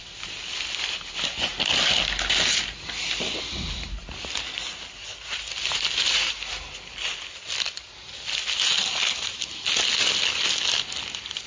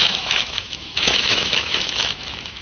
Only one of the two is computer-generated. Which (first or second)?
second